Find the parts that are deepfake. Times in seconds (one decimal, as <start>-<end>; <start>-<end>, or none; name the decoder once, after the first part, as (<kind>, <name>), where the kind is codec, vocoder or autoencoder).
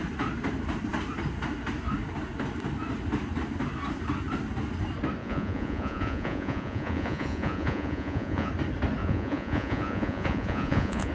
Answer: 5.2-8.5 (vocoder, Vocos); 9.0-11.1